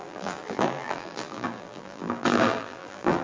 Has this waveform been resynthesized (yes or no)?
yes